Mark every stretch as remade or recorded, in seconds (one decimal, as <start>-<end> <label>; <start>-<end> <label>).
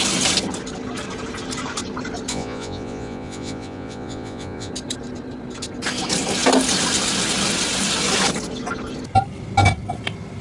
0.0-2.3 recorded; 2.3-4.7 remade; 4.7-10.4 recorded